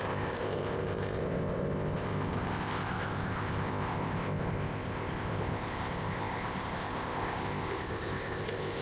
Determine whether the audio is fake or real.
fake